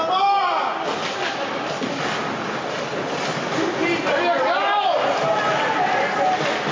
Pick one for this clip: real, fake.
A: real